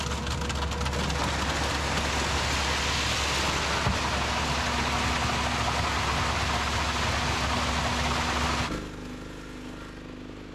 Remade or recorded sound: recorded